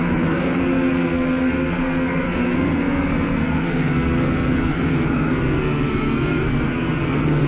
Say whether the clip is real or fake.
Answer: fake